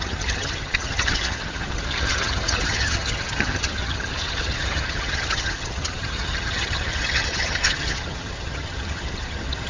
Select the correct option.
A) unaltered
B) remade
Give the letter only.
B